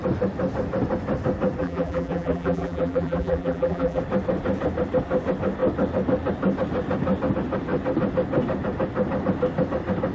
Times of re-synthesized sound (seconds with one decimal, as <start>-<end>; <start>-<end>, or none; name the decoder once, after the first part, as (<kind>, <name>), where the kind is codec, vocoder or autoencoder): 1.6-4.0 (vocoder, BigVGAN v2)